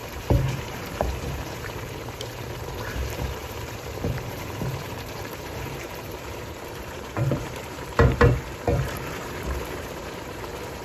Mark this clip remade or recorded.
remade